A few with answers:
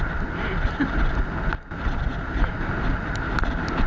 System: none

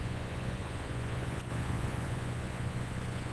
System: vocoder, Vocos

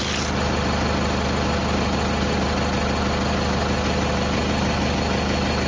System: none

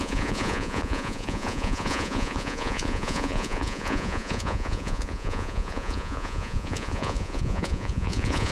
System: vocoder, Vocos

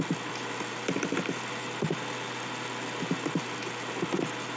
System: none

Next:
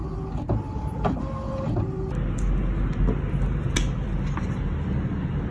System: none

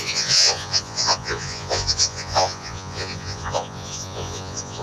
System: vocoder, Vocos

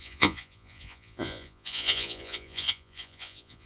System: vocoder, Vocos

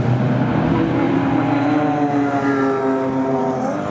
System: none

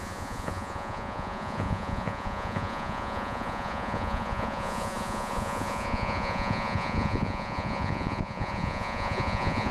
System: vocoder, Vocos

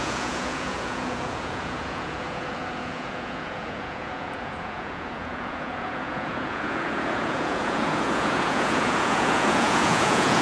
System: vocoder, Vocos